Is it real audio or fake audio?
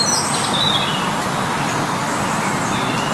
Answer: real